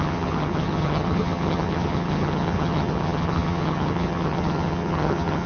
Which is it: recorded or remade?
remade